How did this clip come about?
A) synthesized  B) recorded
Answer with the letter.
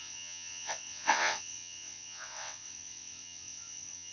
A